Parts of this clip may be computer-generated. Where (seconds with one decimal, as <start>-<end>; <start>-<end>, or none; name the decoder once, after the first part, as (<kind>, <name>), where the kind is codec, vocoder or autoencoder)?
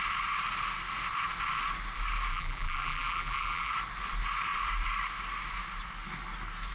2.3-3.7 (vocoder, BigVGAN v2)